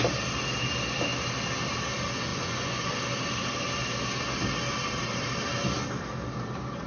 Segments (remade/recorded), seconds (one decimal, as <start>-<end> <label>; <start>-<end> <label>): 0.0-2.3 recorded; 2.3-3.0 remade; 3.0-6.9 recorded